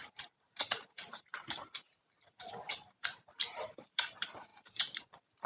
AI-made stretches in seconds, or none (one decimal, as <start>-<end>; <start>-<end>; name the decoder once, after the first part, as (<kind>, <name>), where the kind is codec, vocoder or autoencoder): 0.0-2.0 (vocoder, BigVGAN v2); 2.7-5.5